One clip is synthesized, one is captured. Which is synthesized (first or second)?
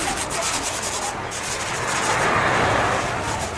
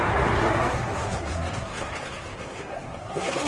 second